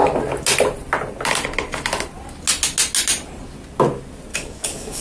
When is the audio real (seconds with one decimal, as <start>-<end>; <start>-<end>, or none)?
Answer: 0.0-4.3